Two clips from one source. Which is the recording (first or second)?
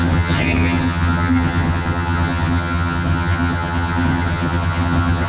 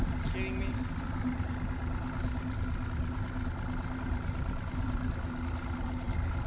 second